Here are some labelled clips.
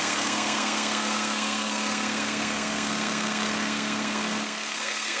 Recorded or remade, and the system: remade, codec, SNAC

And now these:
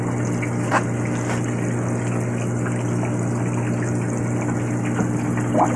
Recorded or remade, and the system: recorded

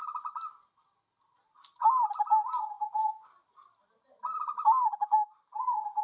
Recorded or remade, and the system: recorded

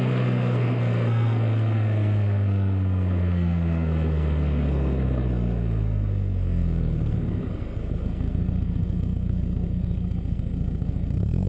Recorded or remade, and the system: remade, codec, SNAC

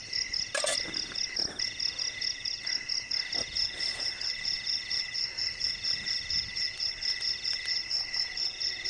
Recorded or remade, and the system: recorded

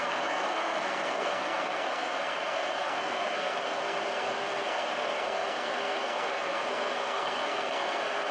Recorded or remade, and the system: remade, codec, SNAC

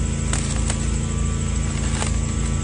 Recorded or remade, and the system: recorded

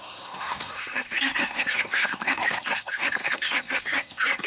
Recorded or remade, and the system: remade, codec, SNAC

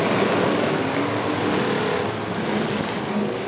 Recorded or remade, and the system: recorded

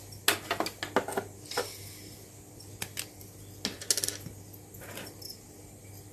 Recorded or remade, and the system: recorded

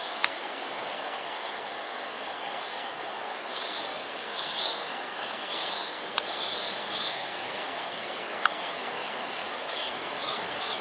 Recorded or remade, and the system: remade, codec, SNAC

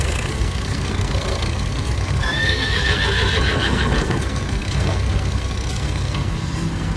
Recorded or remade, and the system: remade, codec, SNAC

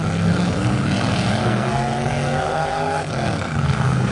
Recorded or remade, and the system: remade, codec, SNAC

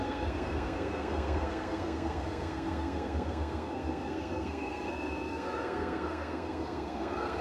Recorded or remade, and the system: remade, codec, SNAC